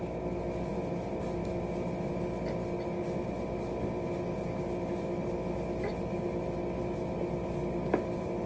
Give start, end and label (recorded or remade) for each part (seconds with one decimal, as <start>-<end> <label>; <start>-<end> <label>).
0.0-8.5 recorded